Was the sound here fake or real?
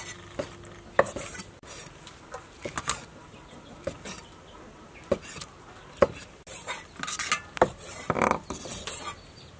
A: real